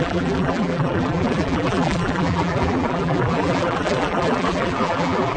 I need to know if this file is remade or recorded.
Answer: remade